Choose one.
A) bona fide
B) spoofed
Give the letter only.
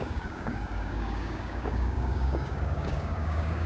B